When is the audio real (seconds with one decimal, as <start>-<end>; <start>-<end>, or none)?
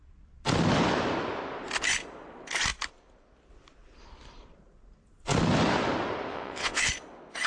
0.0-6.3; 6.9-7.5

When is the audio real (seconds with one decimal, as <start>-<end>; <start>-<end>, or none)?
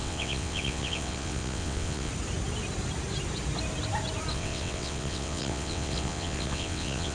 2.1-4.3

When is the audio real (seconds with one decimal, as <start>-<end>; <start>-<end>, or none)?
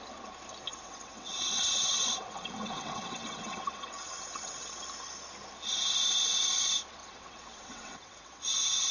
0.0-0.7; 4.8-7.0; 8.4-8.9